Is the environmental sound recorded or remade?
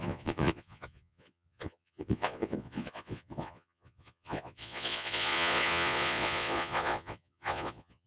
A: remade